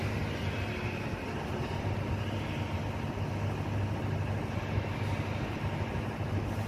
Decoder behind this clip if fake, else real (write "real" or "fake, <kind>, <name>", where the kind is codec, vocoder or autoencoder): real